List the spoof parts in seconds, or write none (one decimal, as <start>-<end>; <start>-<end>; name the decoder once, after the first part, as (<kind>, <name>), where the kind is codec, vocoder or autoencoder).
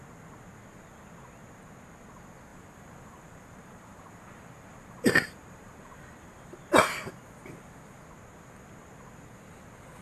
2.5-6.5 (vocoder, BigVGAN v2)